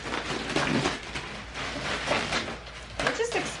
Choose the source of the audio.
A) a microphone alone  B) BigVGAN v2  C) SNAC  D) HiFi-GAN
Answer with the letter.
A